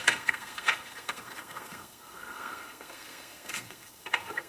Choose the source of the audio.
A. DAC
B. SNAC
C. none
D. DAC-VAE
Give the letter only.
B